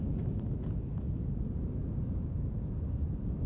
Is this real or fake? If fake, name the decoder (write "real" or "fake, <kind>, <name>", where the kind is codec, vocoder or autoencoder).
real